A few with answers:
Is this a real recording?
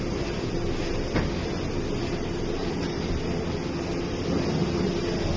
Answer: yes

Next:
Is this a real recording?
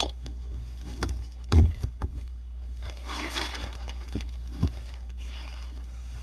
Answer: no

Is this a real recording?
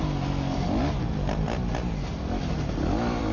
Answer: yes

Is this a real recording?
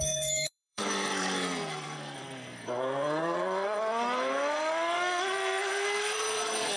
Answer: no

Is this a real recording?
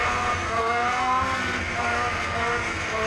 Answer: no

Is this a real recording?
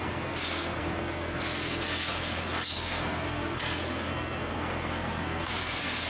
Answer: no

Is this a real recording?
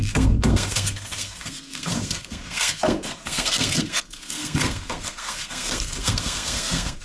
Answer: no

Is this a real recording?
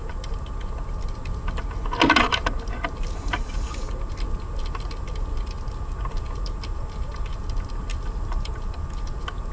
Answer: yes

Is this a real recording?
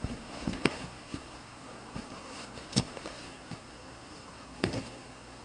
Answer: no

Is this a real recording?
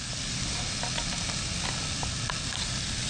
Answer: yes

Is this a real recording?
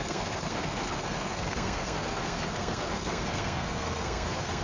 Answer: no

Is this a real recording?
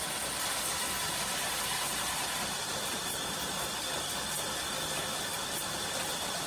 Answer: yes